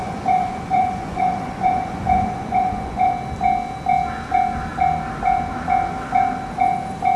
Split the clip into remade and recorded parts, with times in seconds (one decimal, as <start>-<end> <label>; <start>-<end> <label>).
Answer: 0.0-3.1 remade; 3.1-7.2 recorded